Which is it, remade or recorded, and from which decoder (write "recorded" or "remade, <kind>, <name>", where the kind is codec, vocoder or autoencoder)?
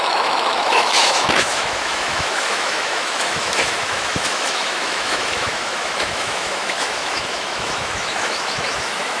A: remade, autoencoder, DAC-VAE